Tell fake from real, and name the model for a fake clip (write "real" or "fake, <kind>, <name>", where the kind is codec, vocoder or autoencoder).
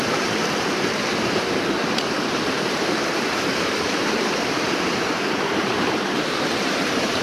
fake, vocoder, BigVGAN v2